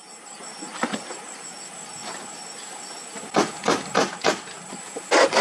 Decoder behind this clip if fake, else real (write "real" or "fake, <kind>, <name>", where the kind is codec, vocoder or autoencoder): real